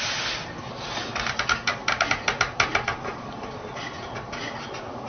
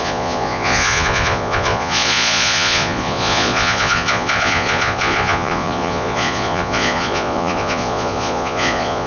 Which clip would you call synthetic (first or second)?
second